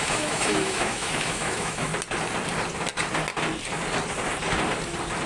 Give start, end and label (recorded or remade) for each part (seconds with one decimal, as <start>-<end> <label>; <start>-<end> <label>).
0.0-1.9 remade; 1.9-5.3 recorded